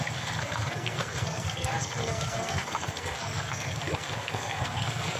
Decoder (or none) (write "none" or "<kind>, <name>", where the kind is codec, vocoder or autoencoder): codec, SNAC